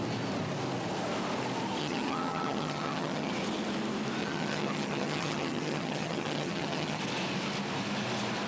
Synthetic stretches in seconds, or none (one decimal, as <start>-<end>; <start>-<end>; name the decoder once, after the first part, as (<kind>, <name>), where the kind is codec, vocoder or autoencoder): 1.8-3.3 (vocoder, HiFi-GAN); 4.2-7.0